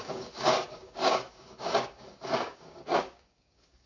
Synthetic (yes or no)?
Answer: yes